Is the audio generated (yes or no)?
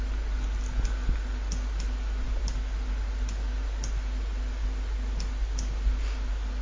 no